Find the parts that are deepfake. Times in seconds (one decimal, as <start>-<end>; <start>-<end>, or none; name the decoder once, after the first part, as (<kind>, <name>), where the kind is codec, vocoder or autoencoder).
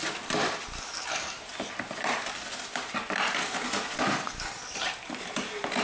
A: none